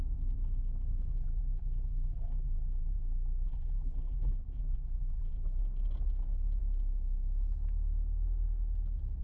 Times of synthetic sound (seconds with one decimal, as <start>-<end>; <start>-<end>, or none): 1.1-5.6